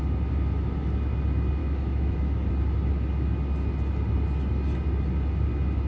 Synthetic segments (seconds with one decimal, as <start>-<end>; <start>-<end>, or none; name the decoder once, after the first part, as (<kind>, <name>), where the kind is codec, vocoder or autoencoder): 1.6-2.5 (autoencoder, DAC-VAE)

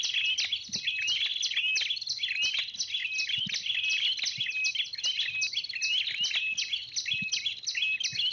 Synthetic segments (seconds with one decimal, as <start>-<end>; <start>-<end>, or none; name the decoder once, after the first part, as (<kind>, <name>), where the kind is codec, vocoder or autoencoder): none

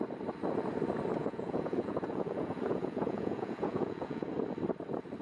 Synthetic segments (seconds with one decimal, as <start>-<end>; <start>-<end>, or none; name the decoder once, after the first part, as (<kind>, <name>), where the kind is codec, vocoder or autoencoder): 1.2-4.3 (vocoder, Vocos)

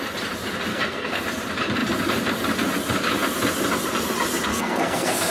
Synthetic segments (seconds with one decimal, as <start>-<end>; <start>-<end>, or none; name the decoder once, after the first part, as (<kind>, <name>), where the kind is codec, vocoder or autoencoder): 0.7-1.2 (codec, SNAC); 4.5-5.3

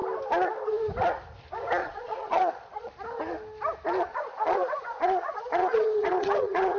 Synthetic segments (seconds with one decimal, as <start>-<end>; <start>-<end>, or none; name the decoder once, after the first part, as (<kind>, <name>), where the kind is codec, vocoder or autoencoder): 1.8-2.9 (vocoder, Vocos); 4.1-6.8

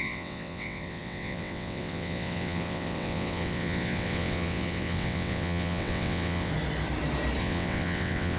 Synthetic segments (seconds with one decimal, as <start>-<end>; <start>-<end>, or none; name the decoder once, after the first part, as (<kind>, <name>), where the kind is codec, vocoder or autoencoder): 0.0-6.5 (vocoder, WaveNeXt); 7.4-8.4

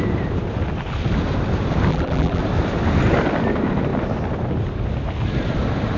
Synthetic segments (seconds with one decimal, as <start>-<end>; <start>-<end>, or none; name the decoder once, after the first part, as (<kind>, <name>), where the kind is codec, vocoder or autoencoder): 1.9-2.4 (vocoder, BigVGAN v2)